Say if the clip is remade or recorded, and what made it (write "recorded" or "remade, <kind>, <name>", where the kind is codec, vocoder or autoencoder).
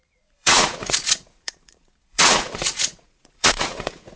remade, vocoder, Vocos